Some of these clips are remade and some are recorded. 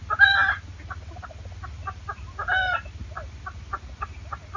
recorded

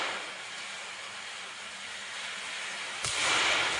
recorded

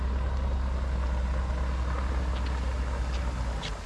recorded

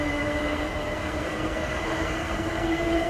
remade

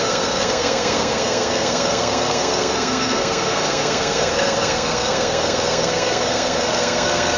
remade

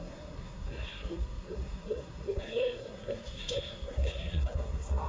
remade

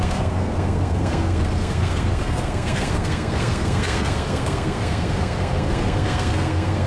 remade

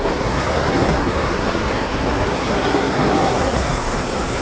remade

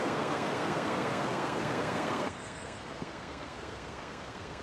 remade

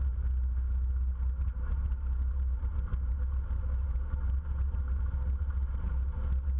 recorded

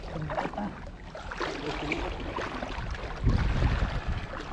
recorded